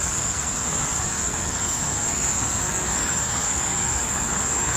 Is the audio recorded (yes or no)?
no